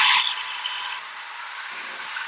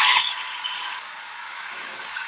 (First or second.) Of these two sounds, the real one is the first